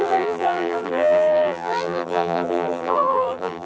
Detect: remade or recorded remade